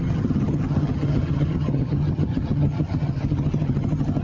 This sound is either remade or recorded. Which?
remade